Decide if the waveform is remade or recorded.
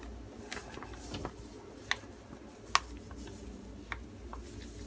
recorded